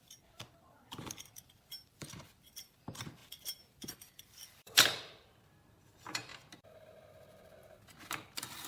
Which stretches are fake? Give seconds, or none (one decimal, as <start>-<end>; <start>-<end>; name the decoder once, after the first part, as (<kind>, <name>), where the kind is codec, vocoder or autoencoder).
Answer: 0.0-6.3 (vocoder, BigVGAN v2)